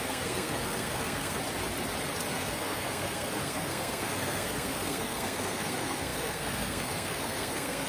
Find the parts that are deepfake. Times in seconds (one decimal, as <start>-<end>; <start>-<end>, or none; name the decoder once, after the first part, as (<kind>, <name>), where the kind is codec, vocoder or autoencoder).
0.0-1.4 (codec, SNAC); 2.3-7.9